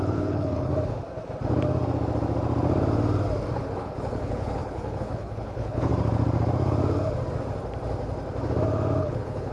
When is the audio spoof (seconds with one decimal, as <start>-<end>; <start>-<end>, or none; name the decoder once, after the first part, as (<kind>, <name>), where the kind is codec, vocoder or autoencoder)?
0.0-0.7 (codec, HILCodec); 3.6-5.9; 9.0-9.5